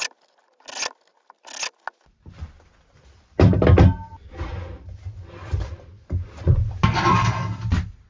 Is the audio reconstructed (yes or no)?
no